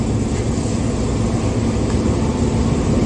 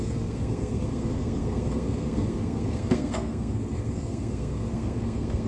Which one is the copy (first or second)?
second